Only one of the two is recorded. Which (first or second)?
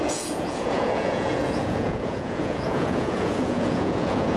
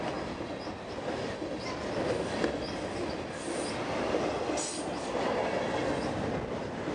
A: second